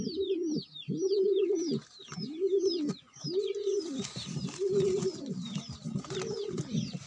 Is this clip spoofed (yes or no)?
no